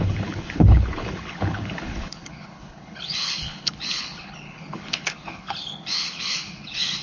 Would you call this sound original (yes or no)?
no